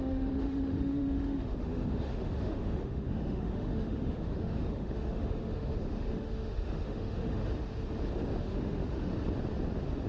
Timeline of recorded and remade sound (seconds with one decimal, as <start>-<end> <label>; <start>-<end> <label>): 0.0-7.4 remade; 7.4-8.4 recorded; 8.4-9.1 remade; 9.1-10.1 recorded